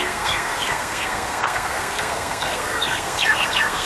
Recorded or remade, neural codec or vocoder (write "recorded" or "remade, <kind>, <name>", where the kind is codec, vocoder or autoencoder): remade, codec, SNAC